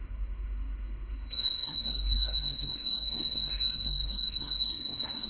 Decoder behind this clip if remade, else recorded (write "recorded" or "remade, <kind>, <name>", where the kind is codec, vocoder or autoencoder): remade, codec, SNAC